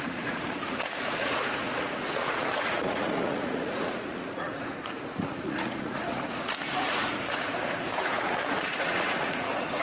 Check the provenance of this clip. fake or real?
fake